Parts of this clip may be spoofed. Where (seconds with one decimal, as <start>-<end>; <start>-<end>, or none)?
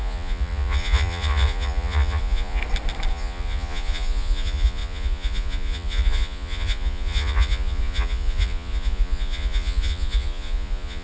0.0-2.6; 3.1-11.0